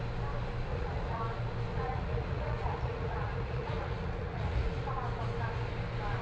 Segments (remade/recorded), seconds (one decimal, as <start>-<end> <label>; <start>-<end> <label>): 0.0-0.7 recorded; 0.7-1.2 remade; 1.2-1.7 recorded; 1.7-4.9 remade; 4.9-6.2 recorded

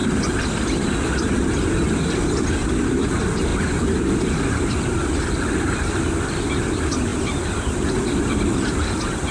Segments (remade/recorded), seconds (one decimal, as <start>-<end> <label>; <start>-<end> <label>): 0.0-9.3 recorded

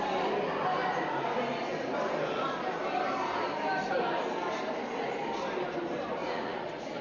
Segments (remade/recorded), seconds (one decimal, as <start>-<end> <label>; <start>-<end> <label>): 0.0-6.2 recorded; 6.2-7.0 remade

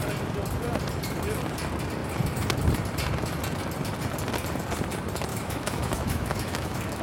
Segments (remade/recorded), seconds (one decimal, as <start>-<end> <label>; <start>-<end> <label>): 0.0-5.3 recorded; 5.3-7.0 remade

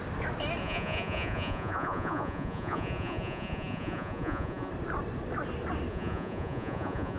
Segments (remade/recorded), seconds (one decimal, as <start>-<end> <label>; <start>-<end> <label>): 0.0-0.6 recorded; 0.6-4.7 remade; 4.7-5.9 recorded; 5.9-7.2 remade